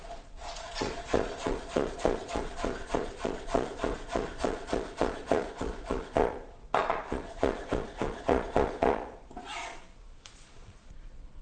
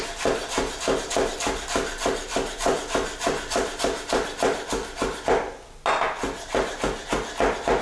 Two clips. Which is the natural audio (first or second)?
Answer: second